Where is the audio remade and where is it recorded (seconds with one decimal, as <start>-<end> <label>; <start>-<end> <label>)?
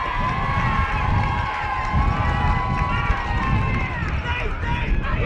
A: 0.0-5.3 recorded